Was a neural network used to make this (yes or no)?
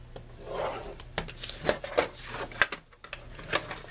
no